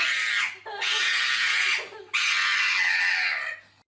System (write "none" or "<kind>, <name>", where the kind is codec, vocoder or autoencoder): none